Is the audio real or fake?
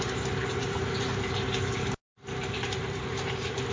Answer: fake